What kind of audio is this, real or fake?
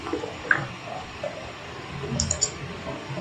fake